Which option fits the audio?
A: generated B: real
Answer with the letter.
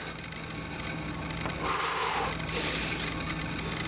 B